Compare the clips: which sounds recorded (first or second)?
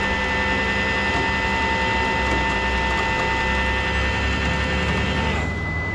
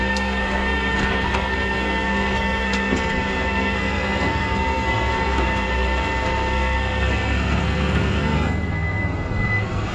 first